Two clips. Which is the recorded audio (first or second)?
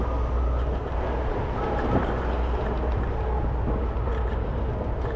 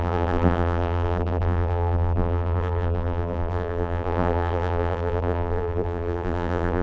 first